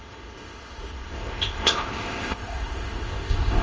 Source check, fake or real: fake